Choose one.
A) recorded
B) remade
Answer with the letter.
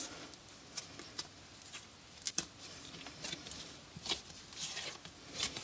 A